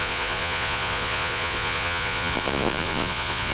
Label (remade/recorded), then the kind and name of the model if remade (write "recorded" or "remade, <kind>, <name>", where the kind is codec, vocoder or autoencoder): remade, vocoder, Vocos